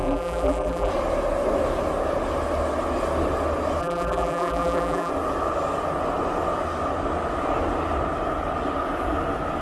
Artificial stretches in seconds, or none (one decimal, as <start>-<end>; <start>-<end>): 0.0-0.9; 3.8-5.1